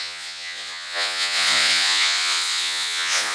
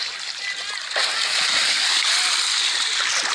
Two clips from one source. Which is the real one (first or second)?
second